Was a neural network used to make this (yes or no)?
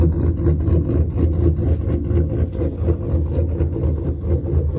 no